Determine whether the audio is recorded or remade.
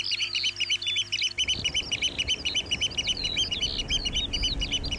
recorded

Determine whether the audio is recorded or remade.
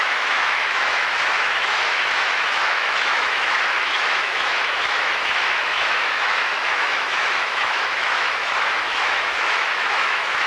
remade